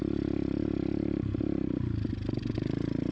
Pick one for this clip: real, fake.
real